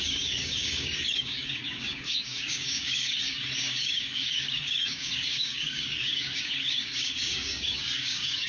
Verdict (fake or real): fake